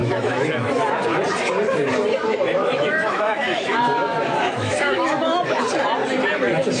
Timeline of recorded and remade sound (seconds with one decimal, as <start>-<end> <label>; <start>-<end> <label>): 0.0-0.7 remade; 0.7-2.6 recorded; 2.6-5.6 remade; 5.6-6.8 recorded